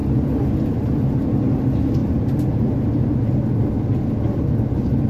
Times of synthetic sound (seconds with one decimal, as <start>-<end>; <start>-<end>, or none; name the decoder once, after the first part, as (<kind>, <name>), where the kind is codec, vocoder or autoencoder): 2.0-3.3 (vocoder, BigVGAN v2)